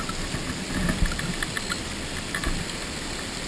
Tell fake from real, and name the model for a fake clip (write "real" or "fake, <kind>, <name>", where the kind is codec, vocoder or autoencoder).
real